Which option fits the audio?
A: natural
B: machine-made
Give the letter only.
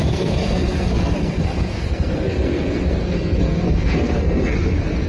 B